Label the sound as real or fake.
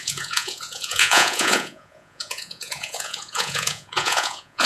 fake